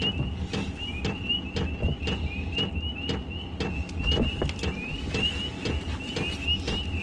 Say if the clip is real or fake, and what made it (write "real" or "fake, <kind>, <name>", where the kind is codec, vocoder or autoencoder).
real